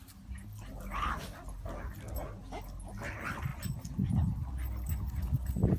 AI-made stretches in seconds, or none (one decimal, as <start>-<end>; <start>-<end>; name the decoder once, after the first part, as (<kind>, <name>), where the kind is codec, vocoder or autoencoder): none